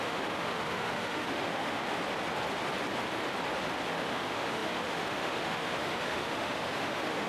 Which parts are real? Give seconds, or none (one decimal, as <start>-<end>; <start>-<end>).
1.8-3.9